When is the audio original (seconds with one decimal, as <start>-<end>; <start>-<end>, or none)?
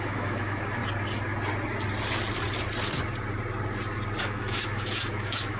0.8-4.2